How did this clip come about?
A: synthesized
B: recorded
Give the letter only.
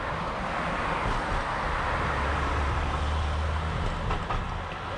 B